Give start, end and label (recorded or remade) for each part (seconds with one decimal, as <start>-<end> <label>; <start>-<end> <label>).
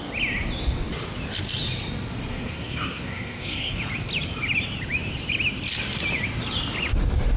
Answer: 0.0-2.3 recorded; 2.3-3.8 remade; 3.8-7.4 recorded